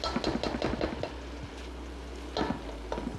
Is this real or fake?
real